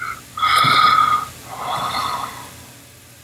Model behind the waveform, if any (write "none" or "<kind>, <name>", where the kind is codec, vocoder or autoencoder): none